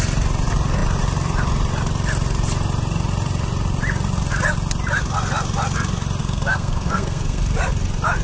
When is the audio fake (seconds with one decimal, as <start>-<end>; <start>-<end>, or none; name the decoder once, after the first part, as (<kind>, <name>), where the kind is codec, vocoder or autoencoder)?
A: 6.2-7.4 (codec, SNAC)